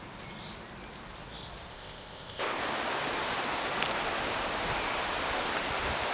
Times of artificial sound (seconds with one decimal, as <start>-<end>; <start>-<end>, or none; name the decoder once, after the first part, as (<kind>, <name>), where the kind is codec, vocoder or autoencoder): 1.7-2.6 (codec, ZipCodec)